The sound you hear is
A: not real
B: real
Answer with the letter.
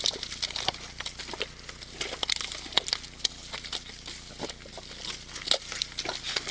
B